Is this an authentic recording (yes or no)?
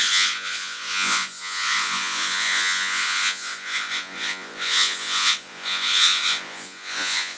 no